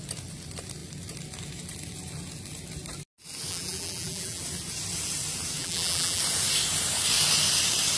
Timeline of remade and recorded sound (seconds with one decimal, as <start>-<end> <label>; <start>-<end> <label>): 0.0-3.5 recorded; 3.5-4.4 remade; 4.4-5.6 recorded; 5.6-6.2 remade; 6.2-8.0 recorded

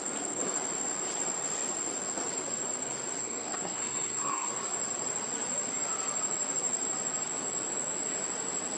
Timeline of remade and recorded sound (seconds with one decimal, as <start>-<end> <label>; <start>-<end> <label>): 0.0-3.2 recorded; 3.2-4.5 remade; 4.5-8.8 recorded

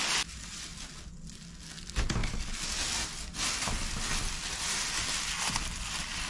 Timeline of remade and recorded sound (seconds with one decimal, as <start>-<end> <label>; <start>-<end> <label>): 0.0-6.3 recorded

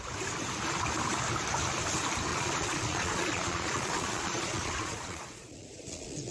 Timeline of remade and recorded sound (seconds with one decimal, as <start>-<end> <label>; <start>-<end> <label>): 0.0-2.3 recorded; 2.3-6.3 remade

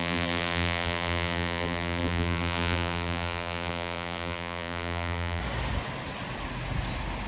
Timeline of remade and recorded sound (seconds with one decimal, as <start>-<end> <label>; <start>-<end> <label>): 0.0-5.4 remade; 5.4-7.3 recorded

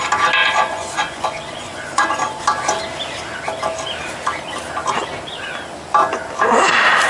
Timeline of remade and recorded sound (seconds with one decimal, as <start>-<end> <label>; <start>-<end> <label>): 0.0-0.4 recorded; 0.4-2.4 remade; 2.4-7.1 recorded